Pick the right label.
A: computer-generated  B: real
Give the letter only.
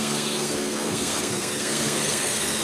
A